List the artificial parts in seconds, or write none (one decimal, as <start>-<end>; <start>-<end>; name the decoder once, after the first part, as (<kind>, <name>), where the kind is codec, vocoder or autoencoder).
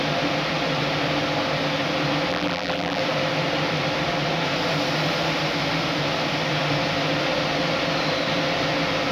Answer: 2.3-3.0 (vocoder, BigVGAN v2)